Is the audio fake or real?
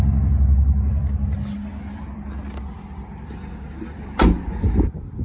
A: real